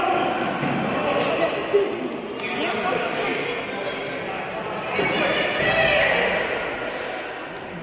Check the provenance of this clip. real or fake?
real